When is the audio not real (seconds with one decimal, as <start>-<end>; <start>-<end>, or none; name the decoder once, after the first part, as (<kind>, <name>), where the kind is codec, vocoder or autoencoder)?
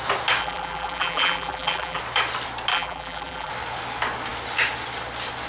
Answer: 0.4-2.0 (vocoder, BigVGAN v2); 2.7-3.5